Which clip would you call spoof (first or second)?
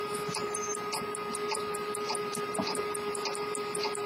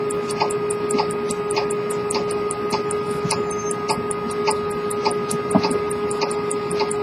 first